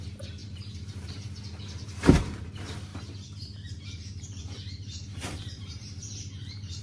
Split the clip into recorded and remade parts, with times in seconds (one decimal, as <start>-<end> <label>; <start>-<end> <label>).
0.0-0.4 recorded; 0.4-1.4 remade; 1.4-2.9 recorded; 2.9-6.8 remade